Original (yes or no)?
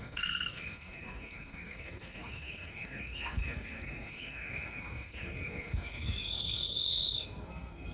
no